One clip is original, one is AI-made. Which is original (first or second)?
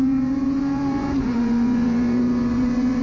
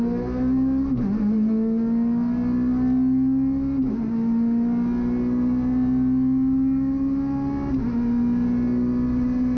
second